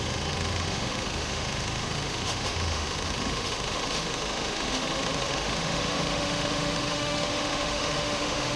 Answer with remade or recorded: remade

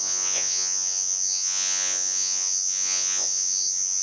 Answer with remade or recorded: remade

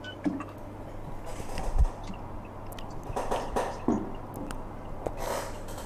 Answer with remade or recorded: recorded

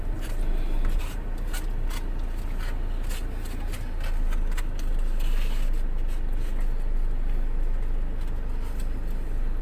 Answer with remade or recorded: recorded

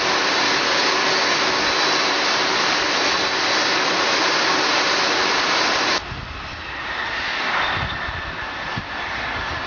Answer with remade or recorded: recorded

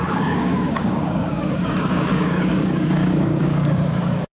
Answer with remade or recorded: remade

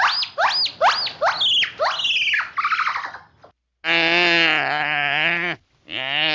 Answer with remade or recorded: recorded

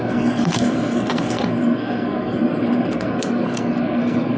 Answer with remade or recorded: remade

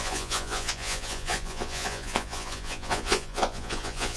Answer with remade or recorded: remade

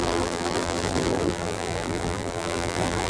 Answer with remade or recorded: remade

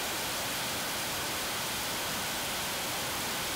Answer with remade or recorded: recorded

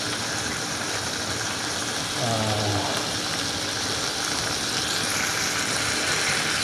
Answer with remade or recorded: recorded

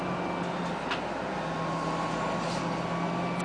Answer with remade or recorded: recorded